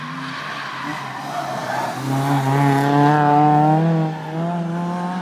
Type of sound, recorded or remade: recorded